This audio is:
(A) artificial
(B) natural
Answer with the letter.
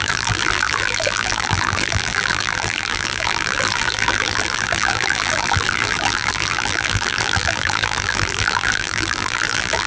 A